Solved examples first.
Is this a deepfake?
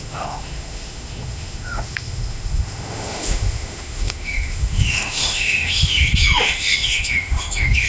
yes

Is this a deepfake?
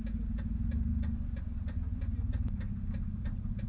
no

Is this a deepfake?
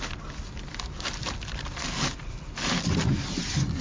no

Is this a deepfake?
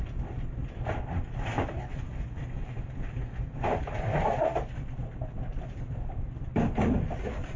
yes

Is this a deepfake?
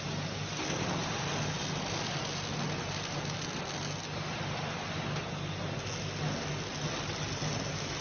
no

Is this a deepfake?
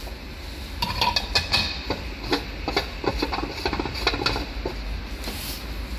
no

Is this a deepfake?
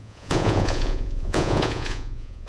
yes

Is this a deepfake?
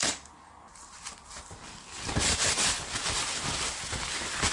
no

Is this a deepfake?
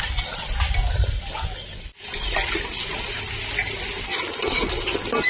no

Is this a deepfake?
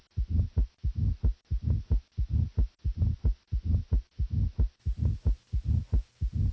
no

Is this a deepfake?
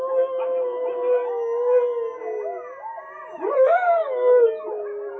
no